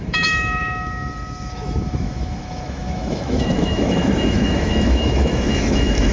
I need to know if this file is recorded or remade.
remade